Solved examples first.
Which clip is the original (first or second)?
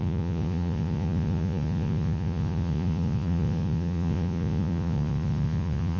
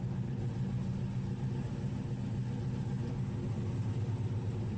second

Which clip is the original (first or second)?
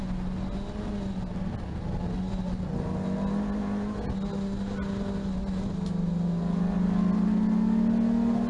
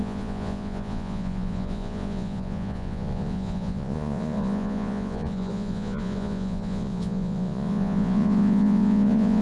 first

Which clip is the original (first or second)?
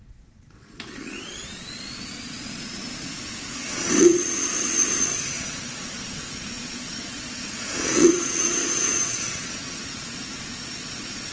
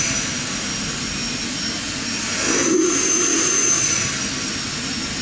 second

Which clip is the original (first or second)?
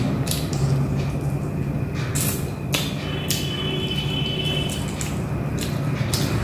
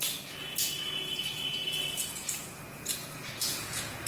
first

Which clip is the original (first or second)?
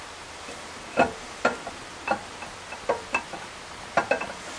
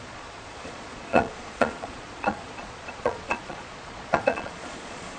first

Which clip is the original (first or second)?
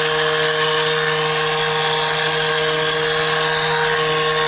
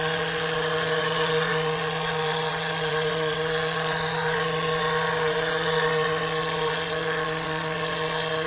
first